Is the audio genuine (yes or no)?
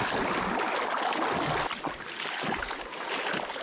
yes